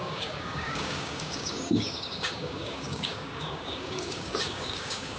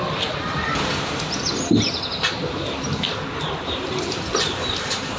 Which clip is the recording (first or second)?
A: second